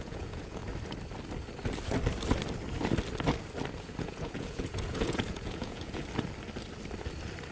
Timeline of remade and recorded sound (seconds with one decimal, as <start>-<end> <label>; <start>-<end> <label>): 0.0-0.6 remade; 0.6-4.0 recorded; 4.0-6.0 remade; 6.0-7.5 recorded